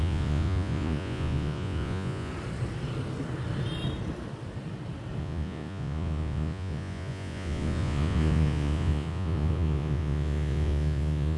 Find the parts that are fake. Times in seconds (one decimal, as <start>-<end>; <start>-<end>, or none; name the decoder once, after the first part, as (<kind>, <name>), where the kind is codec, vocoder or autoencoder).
0.0-2.3 (vocoder, Vocos); 5.2-11.4